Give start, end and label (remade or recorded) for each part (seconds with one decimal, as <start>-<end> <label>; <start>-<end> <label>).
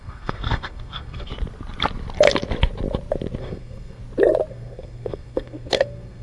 0.0-1.3 remade; 1.3-3.4 recorded; 3.4-4.0 remade; 4.0-4.5 recorded; 4.5-6.2 remade